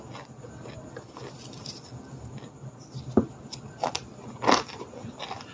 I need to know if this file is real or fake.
real